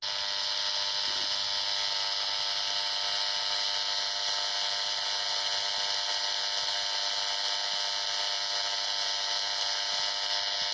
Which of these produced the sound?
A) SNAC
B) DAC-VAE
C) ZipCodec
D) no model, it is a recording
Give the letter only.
D